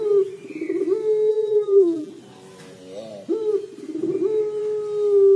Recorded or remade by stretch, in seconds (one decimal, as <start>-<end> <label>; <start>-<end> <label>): 0.0-1.3 recorded; 1.3-2.1 remade; 2.1-5.4 recorded

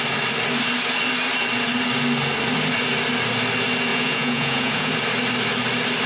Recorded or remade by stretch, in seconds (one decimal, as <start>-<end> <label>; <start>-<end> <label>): 0.0-3.9 recorded; 3.9-4.9 remade; 4.9-6.1 recorded

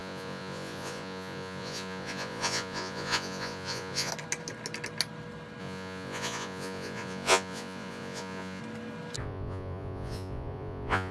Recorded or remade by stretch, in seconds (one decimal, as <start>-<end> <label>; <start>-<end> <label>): 0.0-4.1 remade; 4.1-5.6 recorded; 5.6-8.6 remade; 8.6-9.2 recorded; 9.2-11.1 remade

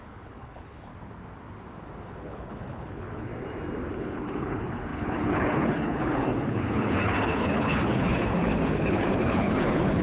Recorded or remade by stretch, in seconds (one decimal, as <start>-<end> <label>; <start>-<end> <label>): 0.0-0.9 remade; 0.9-2.0 recorded; 2.0-3.3 remade; 3.3-3.9 recorded; 3.9-10.0 remade

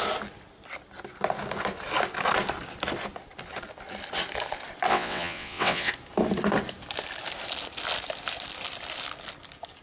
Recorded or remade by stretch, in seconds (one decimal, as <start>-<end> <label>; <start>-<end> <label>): 0.0-4.9 recorded; 4.9-5.9 remade; 5.9-9.8 recorded

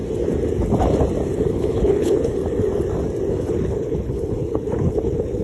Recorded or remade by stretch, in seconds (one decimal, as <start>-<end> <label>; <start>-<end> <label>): 0.0-1.5 recorded; 1.5-2.4 remade; 2.4-3.3 recorded; 3.3-5.4 remade

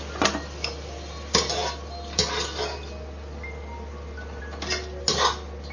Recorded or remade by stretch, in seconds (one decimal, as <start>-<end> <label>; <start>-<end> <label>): 0.0-5.7 recorded

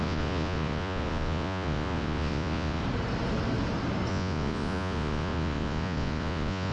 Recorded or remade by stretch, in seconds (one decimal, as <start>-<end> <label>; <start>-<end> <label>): 0.0-2.8 remade; 2.8-4.1 recorded; 4.1-6.7 remade